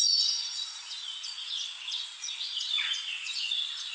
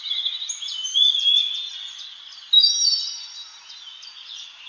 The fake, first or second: first